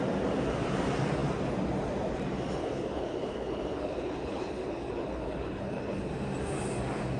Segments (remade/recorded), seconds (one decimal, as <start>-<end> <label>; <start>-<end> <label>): 0.0-2.6 recorded; 2.6-6.1 remade; 6.1-7.2 recorded